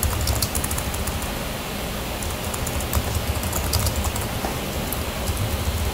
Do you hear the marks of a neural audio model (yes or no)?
no